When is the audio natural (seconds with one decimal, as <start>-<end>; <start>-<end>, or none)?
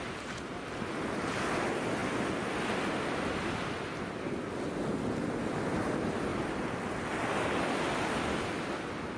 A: 0.0-9.2